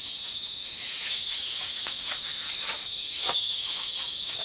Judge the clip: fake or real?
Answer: fake